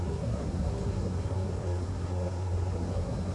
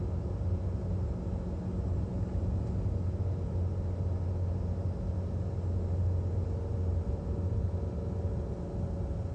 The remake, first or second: first